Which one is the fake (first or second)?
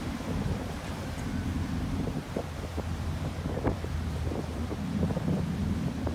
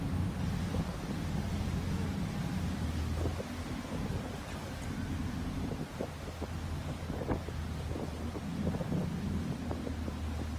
first